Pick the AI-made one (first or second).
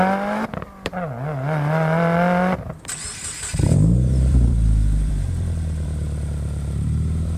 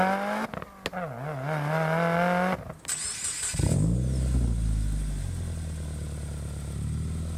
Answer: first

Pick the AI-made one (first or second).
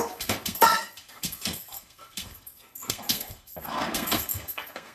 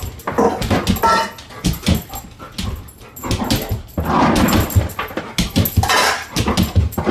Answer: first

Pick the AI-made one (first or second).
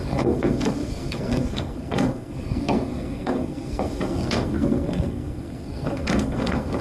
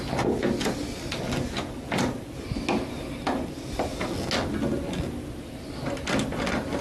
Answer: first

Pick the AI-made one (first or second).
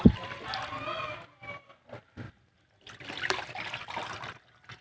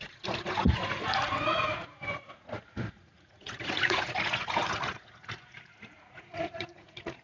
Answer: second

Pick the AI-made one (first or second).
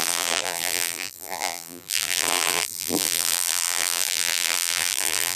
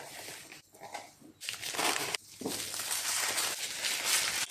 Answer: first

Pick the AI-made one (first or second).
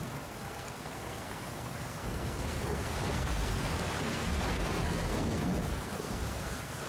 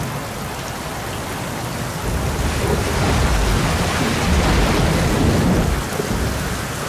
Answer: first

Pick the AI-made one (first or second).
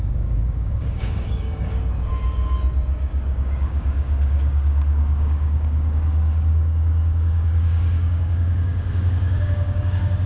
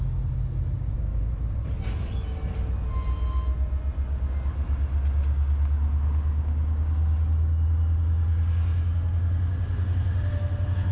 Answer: first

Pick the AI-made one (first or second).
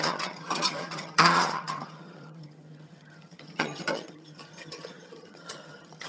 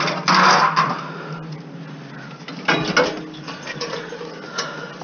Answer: first